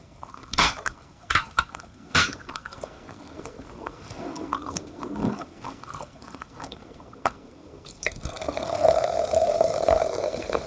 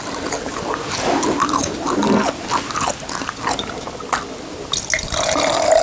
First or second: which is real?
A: second